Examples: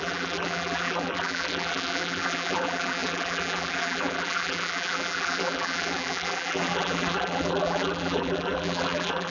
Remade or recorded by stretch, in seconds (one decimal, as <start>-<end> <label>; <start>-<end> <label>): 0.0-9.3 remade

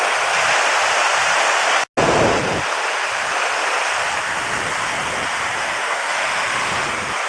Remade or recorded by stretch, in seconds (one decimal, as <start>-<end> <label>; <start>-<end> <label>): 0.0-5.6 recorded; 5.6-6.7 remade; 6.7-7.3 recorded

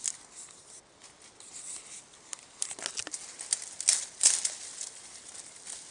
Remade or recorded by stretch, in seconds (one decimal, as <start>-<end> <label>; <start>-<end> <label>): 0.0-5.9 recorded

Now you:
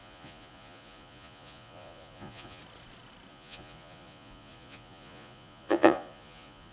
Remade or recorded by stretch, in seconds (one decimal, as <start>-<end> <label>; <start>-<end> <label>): 0.0-2.6 remade; 2.6-3.3 recorded; 3.3-6.7 remade

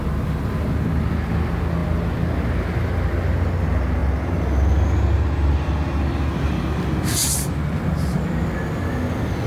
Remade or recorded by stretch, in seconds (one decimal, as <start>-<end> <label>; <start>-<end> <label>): 0.0-9.5 recorded

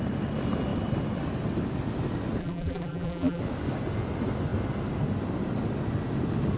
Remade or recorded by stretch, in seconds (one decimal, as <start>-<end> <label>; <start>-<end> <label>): 0.0-2.4 recorded; 2.4-3.4 remade; 3.4-6.6 recorded